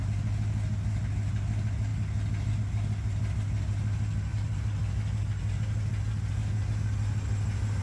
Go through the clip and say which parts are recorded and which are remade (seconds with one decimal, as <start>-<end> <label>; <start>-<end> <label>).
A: 0.0-7.8 recorded